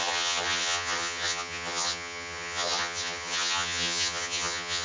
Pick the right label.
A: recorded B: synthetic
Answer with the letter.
B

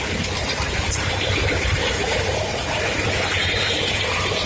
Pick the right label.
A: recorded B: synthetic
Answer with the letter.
B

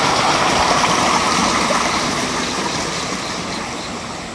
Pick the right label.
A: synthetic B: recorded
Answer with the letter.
B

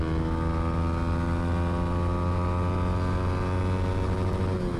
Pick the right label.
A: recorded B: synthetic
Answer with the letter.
A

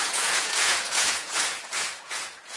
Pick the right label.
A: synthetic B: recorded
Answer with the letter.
A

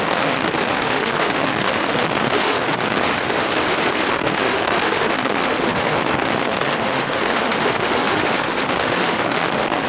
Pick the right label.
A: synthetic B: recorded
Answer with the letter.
A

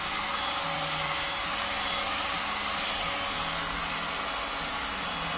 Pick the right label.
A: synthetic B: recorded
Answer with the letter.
B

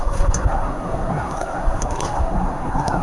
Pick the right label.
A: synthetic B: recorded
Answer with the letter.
A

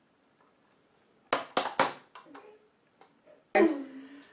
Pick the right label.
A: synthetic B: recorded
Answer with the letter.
B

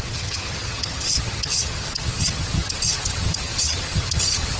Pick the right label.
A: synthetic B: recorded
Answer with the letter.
A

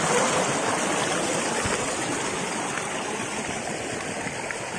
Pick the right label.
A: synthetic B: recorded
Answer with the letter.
B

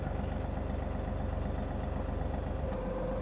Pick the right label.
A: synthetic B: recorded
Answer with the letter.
B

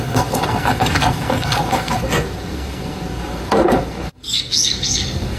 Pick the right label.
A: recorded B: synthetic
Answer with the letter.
B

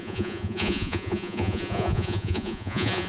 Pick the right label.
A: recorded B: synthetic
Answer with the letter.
B